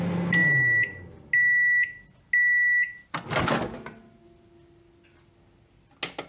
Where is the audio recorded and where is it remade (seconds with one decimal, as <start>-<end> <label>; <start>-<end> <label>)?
0.0-6.3 recorded